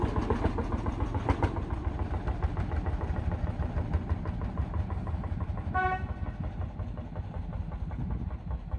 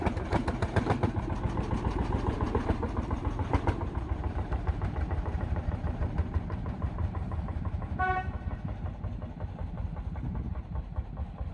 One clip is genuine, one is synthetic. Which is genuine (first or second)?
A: first